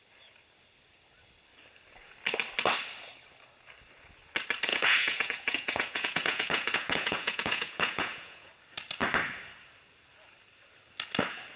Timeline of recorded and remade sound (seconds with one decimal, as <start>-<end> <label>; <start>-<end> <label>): 0.0-4.7 recorded; 4.7-8.5 remade; 8.5-11.6 recorded